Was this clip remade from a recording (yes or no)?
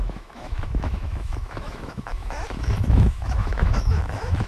yes